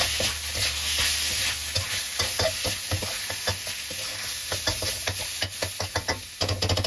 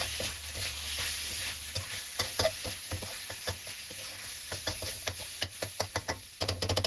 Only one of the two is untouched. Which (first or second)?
first